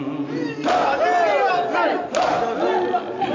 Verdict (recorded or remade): recorded